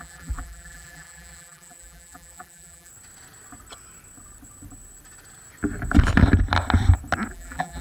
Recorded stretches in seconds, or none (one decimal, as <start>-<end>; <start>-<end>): 2.9-7.3